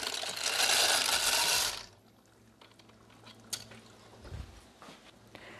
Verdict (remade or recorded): recorded